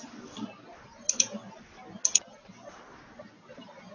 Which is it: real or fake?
real